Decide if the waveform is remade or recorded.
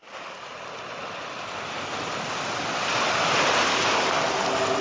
recorded